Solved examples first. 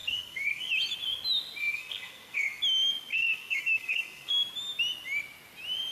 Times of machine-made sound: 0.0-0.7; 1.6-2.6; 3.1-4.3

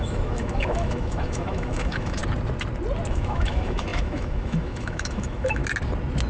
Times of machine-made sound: 0.0-2.2; 3.1-5.6

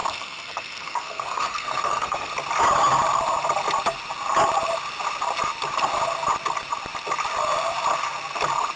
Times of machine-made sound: 0.0-2.3